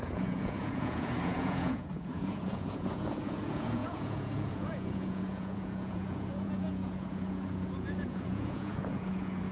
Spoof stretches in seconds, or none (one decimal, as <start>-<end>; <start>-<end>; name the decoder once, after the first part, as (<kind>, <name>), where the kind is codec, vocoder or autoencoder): 0.0-9.5 (vocoder, Vocos)